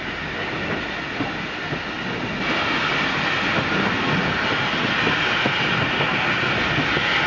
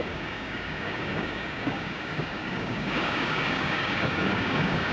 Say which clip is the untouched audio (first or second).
first